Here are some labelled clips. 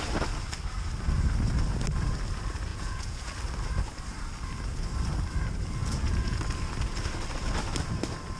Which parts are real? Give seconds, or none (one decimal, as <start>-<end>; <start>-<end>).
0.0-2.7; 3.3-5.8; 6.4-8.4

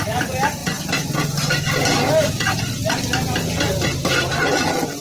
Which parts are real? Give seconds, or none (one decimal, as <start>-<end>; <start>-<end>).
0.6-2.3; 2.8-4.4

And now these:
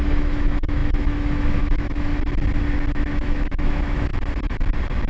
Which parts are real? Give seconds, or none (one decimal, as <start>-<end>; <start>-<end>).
2.1-3.1; 4.1-5.1

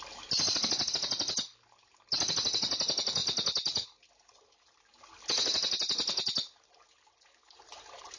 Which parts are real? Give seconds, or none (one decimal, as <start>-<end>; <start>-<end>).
0.0-8.2

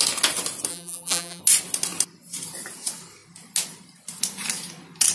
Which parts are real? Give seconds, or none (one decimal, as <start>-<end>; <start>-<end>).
0.0-0.7; 1.4-5.1